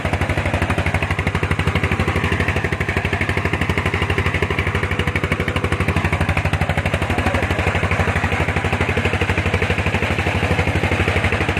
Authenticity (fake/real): real